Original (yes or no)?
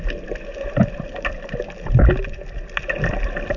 yes